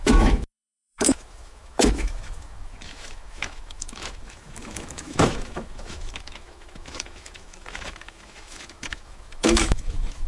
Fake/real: fake